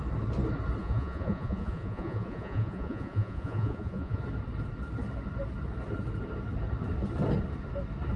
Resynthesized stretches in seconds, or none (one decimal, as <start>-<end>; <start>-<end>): 0.8-4.2

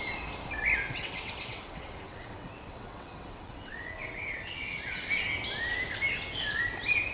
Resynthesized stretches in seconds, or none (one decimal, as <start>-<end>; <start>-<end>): 0.8-5.1

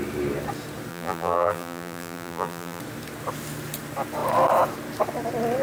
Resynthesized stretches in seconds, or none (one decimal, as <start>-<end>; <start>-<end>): 0.9-2.8

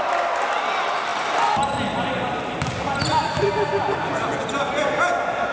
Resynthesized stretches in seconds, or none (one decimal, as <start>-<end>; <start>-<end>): none

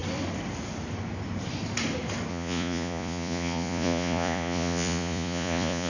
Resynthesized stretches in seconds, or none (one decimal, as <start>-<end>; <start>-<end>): 2.3-5.9

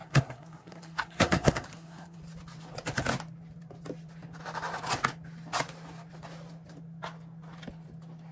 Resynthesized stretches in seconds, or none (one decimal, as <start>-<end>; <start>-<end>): 0.0-2.2